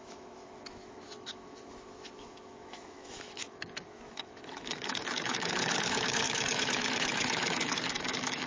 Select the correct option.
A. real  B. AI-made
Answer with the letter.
B